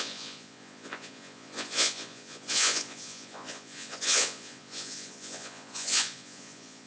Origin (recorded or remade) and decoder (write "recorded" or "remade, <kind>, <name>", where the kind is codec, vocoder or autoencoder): remade, vocoder, Vocos